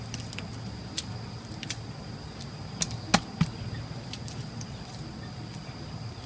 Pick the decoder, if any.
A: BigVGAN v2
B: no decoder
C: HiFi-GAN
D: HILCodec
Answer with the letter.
B